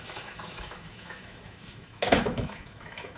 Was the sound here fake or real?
fake